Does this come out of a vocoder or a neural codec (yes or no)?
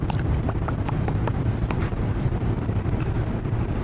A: yes